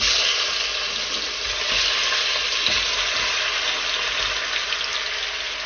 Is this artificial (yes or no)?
no